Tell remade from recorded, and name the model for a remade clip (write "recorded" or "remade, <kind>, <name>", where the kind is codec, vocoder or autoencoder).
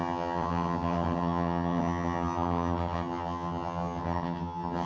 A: remade, vocoder, HiFi-GAN